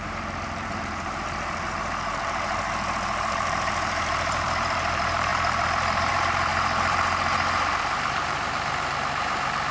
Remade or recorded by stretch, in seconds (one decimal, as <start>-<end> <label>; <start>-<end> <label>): 0.0-9.7 remade